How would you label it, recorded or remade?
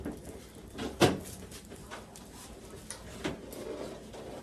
recorded